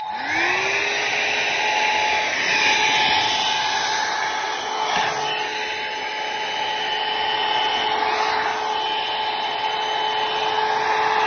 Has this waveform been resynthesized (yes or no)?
no